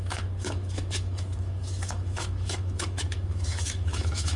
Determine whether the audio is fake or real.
fake